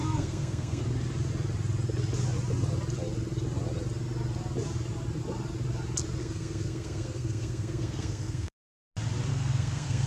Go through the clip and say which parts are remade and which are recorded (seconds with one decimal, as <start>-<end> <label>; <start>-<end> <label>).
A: 0.0-0.8 remade; 0.8-6.2 recorded; 6.2-8.7 remade; 8.7-9.3 recorded; 9.3-10.1 remade